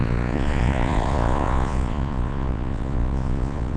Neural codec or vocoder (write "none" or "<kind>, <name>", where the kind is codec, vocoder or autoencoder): vocoder, Vocos